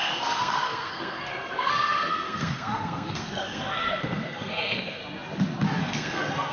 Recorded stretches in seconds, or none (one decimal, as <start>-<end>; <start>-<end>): 5.0-5.8